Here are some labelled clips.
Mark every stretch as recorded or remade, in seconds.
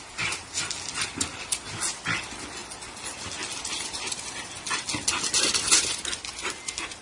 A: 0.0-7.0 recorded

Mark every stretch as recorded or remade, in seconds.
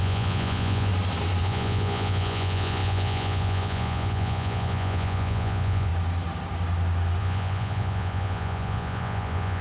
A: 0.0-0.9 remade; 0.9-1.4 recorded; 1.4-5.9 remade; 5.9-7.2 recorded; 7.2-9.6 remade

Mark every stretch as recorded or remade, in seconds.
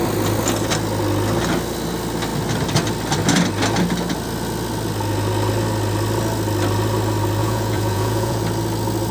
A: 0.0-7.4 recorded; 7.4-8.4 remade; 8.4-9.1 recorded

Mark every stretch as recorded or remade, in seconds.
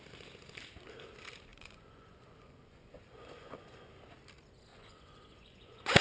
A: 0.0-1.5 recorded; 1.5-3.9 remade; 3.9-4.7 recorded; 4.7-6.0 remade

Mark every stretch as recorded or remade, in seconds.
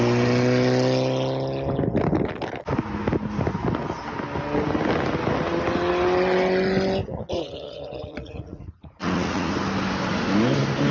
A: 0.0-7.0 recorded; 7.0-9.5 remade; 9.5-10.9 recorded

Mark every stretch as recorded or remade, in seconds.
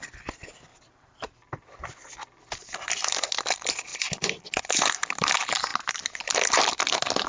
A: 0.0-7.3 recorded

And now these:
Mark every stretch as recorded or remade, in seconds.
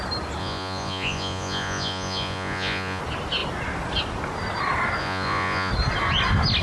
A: 0.0-0.4 recorded; 0.4-3.0 remade; 3.0-5.0 recorded; 5.0-5.7 remade; 5.7-6.6 recorded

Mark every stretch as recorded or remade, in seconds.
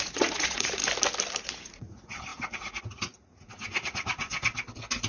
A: 0.0-0.8 remade; 0.8-1.4 recorded; 1.4-4.3 remade; 4.3-5.1 recorded